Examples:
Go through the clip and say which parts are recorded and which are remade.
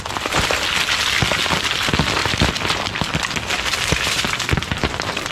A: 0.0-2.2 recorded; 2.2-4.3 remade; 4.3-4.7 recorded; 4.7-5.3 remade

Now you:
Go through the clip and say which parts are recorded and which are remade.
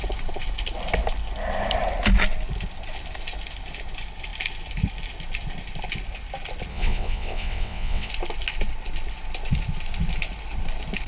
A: 0.0-6.7 recorded; 6.7-8.1 remade; 8.1-11.1 recorded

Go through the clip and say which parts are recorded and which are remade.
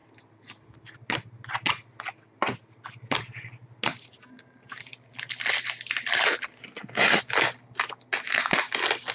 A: 0.0-6.6 recorded; 6.6-7.2 remade; 7.2-9.1 recorded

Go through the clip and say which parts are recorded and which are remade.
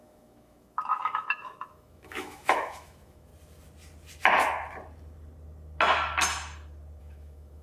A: 0.0-3.3 remade; 3.3-7.0 recorded; 7.0-7.6 remade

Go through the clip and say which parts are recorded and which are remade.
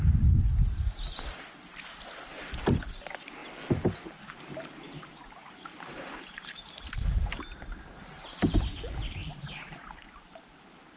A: 0.0-5.7 recorded; 5.7-8.2 remade; 8.2-9.2 recorded; 9.2-10.0 remade; 10.0-11.0 recorded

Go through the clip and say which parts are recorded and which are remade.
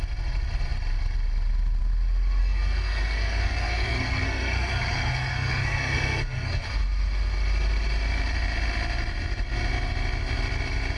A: 0.0-2.4 recorded; 2.4-6.6 remade; 6.6-11.0 recorded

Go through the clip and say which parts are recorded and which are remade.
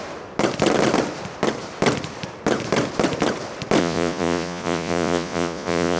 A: 0.0-3.8 recorded; 3.8-6.0 remade